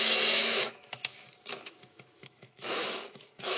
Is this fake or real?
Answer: fake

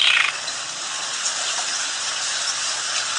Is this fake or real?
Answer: real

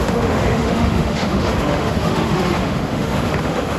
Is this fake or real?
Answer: fake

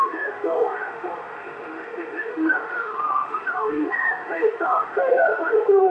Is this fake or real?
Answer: fake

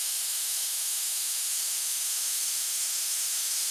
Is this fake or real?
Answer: fake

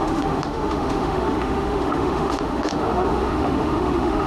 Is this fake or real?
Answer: fake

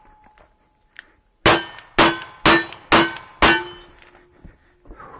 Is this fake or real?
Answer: real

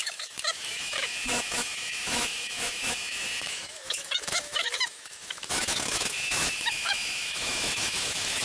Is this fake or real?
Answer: fake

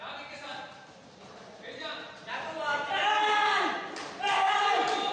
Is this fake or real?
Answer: real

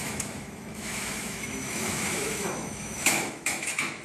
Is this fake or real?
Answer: fake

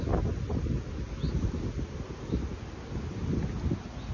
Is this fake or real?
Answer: real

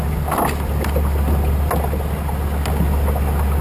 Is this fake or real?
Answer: real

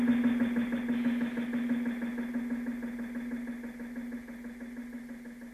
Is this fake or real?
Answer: real